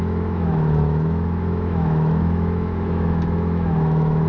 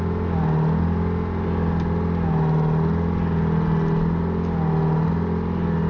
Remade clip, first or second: first